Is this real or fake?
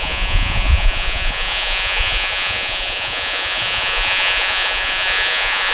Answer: fake